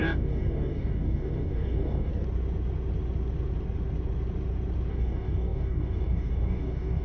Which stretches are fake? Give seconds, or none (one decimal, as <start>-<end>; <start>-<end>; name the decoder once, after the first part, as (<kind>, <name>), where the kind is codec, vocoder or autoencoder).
0.0-2.1 (codec, DAC); 4.9-7.0